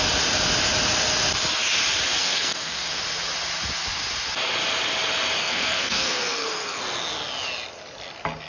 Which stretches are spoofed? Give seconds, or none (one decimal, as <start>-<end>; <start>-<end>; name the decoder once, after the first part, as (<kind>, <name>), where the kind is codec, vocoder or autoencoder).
2.2-2.9 (codec, SNAC); 5.4-6.8